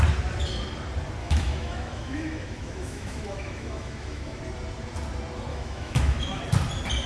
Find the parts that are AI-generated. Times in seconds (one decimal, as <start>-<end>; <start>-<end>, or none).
1.2-4.4; 5.5-6.4